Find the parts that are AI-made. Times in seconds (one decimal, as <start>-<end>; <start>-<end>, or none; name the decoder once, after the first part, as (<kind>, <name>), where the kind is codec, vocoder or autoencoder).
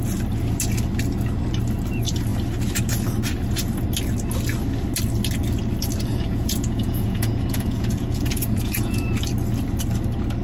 6.1-9.1 (vocoder, Vocos)